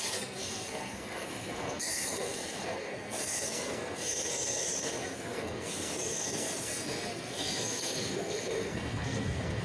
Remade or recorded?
remade